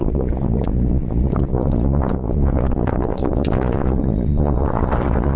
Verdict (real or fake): fake